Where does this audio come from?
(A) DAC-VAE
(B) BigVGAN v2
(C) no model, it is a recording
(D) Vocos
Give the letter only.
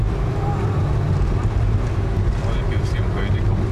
C